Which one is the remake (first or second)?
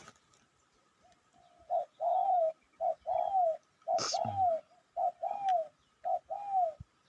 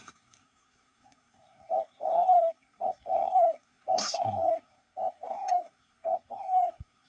second